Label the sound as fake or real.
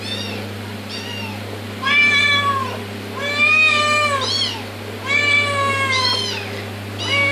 real